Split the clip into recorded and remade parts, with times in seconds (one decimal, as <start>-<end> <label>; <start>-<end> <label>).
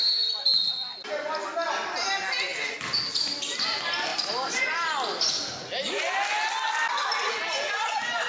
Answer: 0.0-8.3 recorded